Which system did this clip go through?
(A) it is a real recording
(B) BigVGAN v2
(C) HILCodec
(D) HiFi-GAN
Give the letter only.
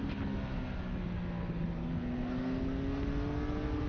A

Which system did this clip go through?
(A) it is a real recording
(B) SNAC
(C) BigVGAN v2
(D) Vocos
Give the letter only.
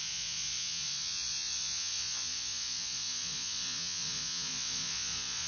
D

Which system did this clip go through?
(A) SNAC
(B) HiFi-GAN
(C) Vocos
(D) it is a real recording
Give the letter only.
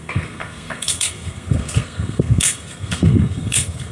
A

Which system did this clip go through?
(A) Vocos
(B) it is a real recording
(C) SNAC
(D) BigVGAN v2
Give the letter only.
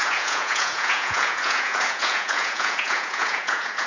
A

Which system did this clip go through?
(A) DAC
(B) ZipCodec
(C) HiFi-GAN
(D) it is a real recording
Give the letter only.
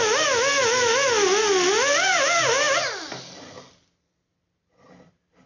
D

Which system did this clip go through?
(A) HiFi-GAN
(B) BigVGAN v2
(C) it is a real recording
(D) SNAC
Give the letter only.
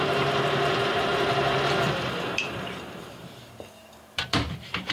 B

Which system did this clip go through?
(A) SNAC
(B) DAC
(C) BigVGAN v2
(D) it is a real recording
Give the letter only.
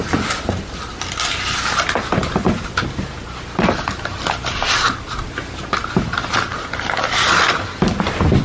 C